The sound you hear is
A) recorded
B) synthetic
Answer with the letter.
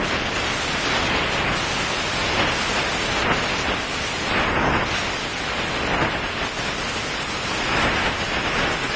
A